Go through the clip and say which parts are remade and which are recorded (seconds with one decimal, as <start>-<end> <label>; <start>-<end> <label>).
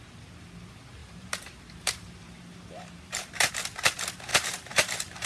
0.0-1.0 recorded; 1.0-3.5 remade; 3.5-4.3 recorded; 4.3-5.3 remade